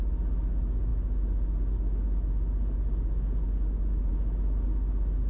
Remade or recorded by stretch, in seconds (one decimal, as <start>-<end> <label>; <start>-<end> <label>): 0.0-5.3 recorded